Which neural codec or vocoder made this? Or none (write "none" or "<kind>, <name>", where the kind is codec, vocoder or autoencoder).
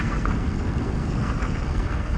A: codec, SNAC